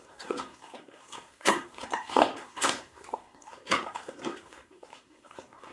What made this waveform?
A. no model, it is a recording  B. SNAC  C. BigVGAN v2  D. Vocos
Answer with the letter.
B